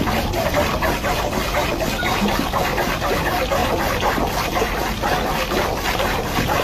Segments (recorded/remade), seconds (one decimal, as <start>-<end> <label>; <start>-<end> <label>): 0.0-6.6 recorded